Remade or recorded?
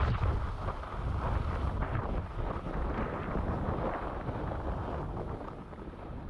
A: recorded